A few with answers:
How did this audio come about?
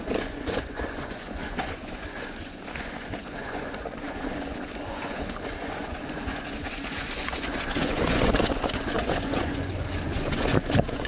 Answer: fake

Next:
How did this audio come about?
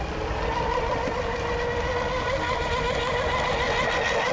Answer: real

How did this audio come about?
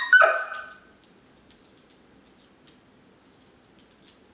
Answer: real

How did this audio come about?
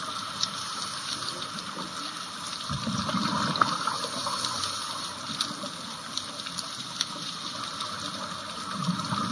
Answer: real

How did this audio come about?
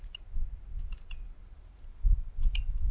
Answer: real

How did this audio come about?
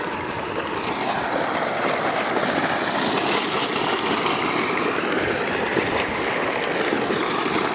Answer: real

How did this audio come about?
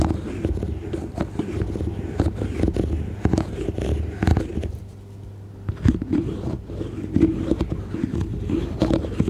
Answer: real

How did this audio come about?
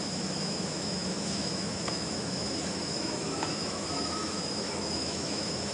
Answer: fake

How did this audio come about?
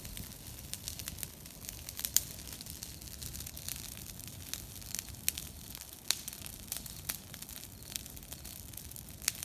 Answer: real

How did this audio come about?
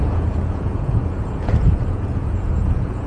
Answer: fake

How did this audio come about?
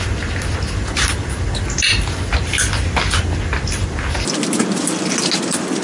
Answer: real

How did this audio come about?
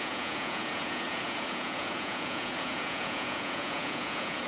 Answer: fake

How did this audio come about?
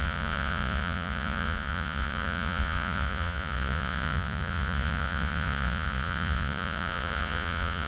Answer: fake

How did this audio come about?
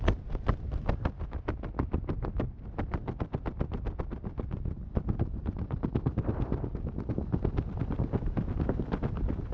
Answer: real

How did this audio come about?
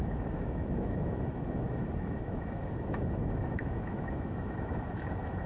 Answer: fake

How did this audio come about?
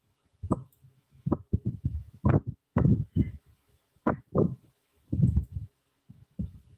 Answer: fake